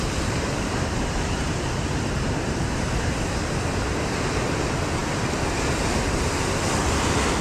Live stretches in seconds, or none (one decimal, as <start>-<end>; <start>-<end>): 0.0-1.4; 3.1-7.4